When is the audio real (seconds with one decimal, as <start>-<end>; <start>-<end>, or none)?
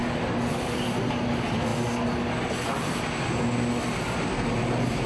0.0-5.1